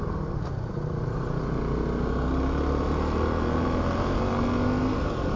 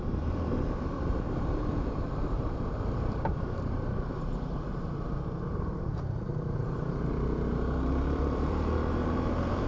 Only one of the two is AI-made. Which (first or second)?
second